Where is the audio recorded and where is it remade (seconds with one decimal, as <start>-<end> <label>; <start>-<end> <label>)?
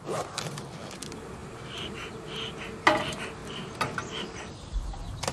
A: 0.0-3.4 recorded; 3.4-4.5 remade; 4.5-5.3 recorded